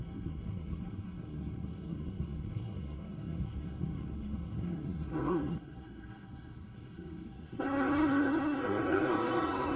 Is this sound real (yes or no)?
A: no